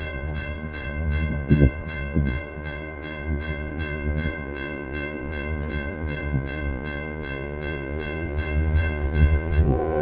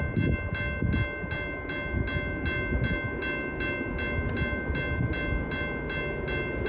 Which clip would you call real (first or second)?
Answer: second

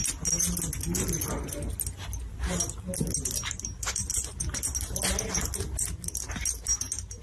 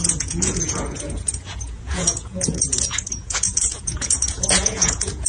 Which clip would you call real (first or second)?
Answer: first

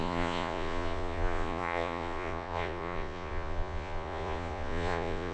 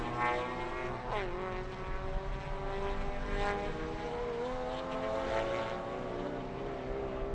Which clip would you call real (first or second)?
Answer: second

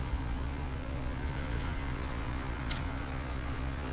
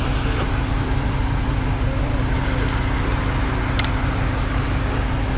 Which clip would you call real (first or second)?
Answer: second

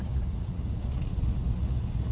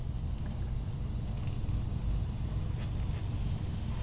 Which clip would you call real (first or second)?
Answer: second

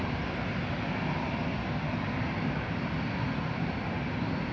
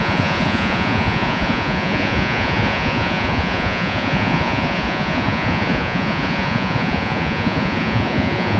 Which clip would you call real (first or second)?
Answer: first